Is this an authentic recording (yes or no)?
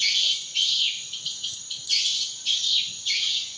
no